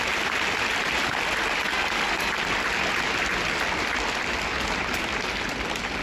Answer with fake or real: real